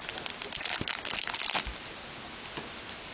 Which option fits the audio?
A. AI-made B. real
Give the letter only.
B